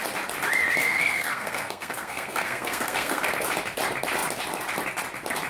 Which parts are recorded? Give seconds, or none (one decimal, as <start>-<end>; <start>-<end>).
0.0-0.8; 3.3-5.5